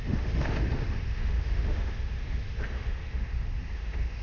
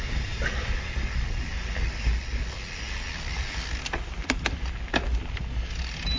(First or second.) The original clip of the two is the second